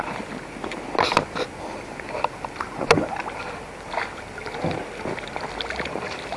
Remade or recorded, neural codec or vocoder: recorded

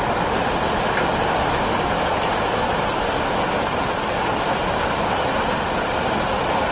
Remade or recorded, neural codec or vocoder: recorded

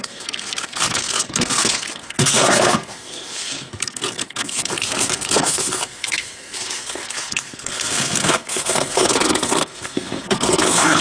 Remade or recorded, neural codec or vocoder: remade, codec, SNAC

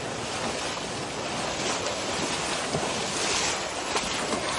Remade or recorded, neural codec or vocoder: recorded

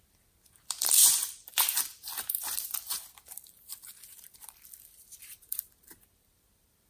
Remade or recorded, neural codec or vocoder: remade, vocoder, BigVGAN v2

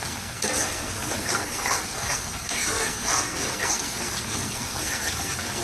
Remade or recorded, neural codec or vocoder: remade, codec, SNAC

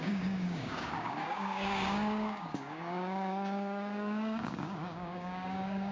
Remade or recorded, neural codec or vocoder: remade, codec, DAC